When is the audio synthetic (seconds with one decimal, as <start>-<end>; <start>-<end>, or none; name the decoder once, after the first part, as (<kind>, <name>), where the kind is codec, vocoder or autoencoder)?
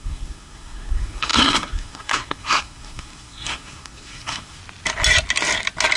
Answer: 0.0-4.6 (codec, SNAC)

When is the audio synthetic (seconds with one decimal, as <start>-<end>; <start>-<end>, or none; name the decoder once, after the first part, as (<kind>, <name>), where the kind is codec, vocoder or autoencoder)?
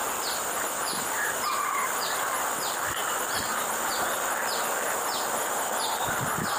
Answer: 3.0-4.9 (vocoder, BigVGAN v2)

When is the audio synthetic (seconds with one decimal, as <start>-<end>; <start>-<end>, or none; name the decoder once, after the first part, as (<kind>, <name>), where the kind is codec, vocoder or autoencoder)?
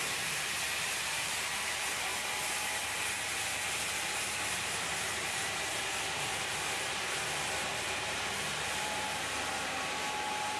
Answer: 0.0-2.1 (vocoder, BigVGAN v2); 5.3-10.6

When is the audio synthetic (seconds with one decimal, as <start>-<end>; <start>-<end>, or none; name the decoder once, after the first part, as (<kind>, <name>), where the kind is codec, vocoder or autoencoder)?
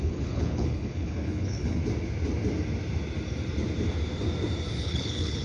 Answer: 0.0-1.8 (codec, HILCodec); 4.8-5.4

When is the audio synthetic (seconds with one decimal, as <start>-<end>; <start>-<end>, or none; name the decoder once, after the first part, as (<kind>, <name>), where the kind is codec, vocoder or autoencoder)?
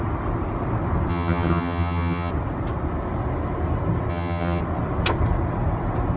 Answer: 1.1-2.3 (vocoder, HiFi-GAN); 4.1-4.6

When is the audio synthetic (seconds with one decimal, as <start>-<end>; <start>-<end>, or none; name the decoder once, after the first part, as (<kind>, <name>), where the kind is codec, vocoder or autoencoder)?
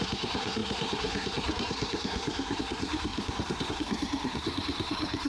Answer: 0.0-5.3 (codec, SNAC)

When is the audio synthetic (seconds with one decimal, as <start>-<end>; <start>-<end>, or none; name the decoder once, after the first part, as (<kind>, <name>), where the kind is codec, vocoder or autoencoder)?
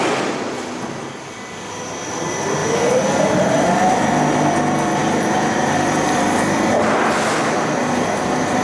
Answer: 2.6-4.1 (vocoder, BigVGAN v2); 5.0-8.6